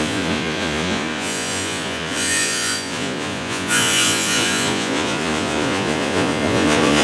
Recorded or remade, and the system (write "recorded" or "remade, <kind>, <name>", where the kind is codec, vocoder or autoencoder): remade, vocoder, Vocos